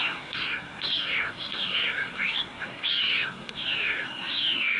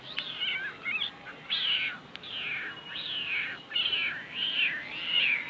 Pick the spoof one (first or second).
first